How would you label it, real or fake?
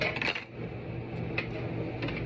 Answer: real